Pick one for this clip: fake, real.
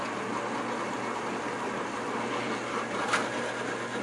real